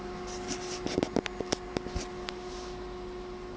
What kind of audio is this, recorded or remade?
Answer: recorded